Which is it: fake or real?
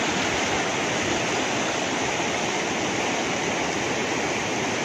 real